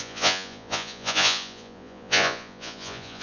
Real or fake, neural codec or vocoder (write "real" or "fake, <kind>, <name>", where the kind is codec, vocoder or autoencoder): fake, vocoder, Vocos